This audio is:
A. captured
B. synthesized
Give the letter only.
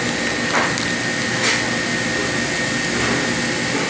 A